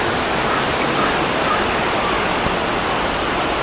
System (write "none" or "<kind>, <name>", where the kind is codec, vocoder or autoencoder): none